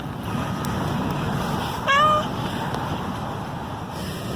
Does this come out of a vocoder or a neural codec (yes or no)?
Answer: no